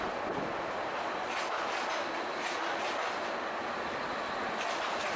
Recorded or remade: recorded